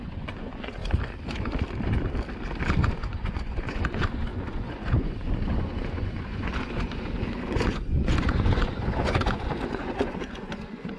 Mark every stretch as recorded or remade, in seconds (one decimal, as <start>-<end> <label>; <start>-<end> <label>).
0.0-0.8 remade; 0.8-2.9 recorded; 2.9-11.0 remade